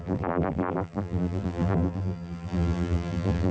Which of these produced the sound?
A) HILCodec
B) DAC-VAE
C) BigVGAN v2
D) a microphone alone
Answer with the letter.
C